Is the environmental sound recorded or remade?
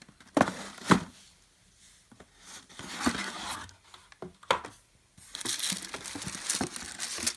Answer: recorded